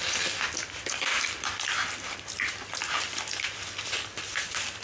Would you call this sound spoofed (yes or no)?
no